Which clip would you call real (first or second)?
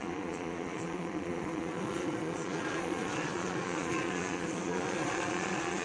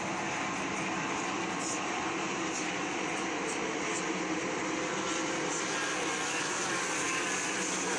second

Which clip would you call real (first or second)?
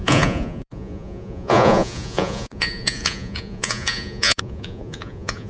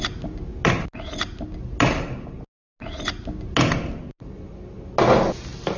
second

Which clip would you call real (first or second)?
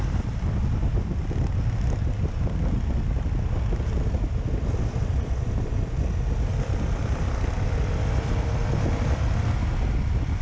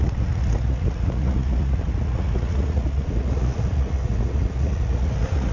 first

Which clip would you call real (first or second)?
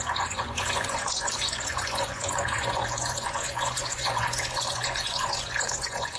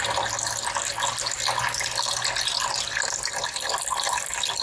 second